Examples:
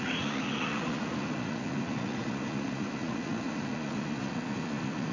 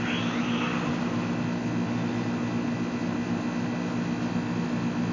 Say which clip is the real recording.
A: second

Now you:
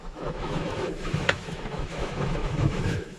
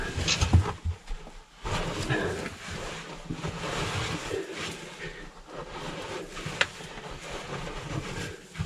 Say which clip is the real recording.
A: second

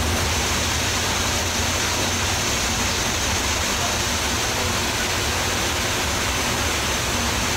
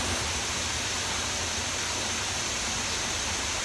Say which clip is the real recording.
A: first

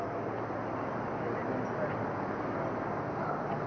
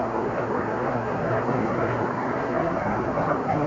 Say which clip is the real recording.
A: first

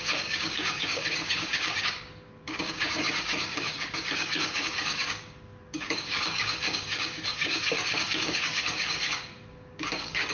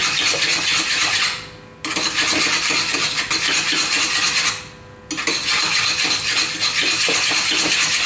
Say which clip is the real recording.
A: second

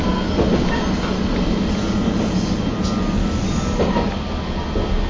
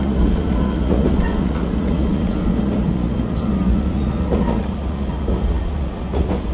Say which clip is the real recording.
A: first